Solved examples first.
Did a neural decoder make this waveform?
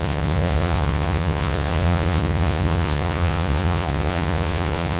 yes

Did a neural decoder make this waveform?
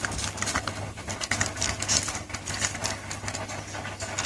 no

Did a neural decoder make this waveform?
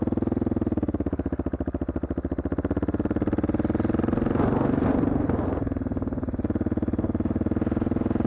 no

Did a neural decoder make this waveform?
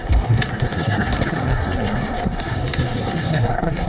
yes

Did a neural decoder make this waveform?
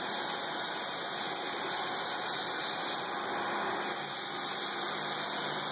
no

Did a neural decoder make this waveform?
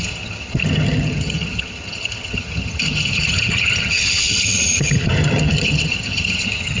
yes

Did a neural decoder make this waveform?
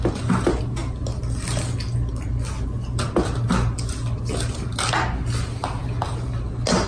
no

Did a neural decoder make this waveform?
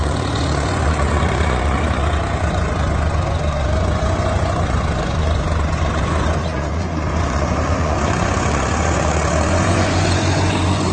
yes